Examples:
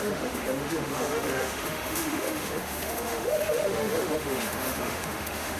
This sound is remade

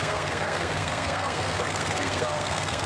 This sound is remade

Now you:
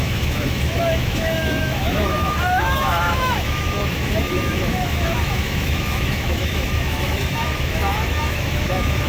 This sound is remade